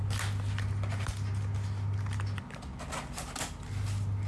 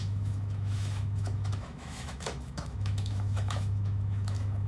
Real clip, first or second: first